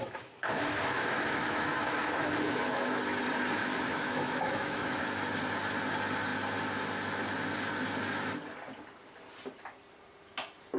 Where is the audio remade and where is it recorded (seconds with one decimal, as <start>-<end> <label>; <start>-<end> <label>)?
0.0-3.0 remade; 3.0-3.6 recorded; 3.6-5.0 remade; 5.0-10.8 recorded